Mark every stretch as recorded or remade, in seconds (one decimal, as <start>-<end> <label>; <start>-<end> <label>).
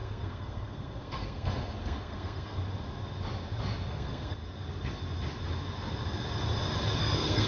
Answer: 0.0-2.6 remade; 2.6-3.9 recorded; 3.9-4.4 remade; 4.4-7.0 recorded; 7.0-7.5 remade